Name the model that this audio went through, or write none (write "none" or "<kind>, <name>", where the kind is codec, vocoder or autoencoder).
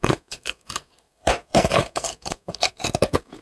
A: codec, SNAC